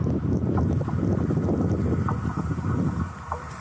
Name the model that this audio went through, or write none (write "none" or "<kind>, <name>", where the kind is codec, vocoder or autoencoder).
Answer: none